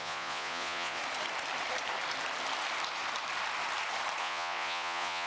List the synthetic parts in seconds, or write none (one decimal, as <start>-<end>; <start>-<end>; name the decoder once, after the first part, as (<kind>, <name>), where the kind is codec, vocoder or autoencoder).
0.0-1.0 (vocoder, Vocos); 4.2-5.3